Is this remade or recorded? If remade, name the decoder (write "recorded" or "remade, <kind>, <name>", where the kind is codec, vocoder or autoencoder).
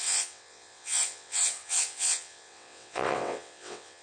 remade, vocoder, WaveNeXt